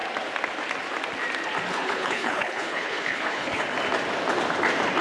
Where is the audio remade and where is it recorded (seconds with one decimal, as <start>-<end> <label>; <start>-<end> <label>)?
0.0-1.7 recorded; 1.7-3.6 remade; 3.6-5.0 recorded